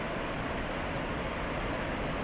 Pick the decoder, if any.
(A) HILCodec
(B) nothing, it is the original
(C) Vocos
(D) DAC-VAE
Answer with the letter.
B